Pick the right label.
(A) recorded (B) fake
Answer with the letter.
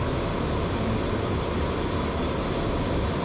A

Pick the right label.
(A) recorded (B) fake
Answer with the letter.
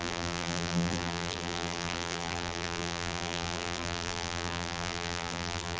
B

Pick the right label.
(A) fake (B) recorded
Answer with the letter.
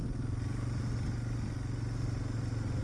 B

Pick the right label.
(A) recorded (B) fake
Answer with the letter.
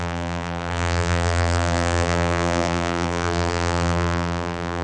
B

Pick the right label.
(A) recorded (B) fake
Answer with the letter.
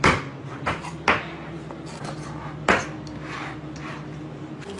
A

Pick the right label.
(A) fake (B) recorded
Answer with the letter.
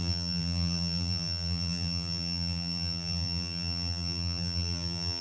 A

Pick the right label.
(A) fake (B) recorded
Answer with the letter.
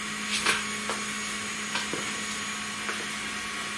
B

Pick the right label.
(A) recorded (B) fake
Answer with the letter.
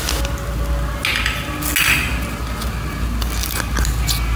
A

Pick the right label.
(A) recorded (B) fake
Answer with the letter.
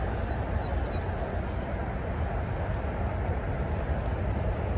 A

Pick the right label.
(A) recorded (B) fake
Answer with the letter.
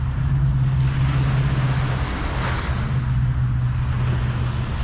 A